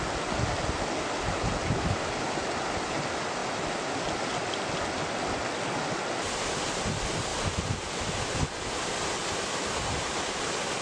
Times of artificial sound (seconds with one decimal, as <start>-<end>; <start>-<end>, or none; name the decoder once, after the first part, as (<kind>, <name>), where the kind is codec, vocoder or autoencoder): none